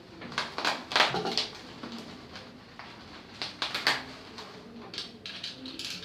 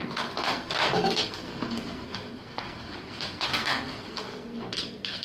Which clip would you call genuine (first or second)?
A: first